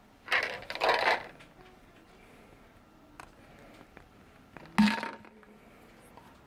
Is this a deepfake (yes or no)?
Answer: no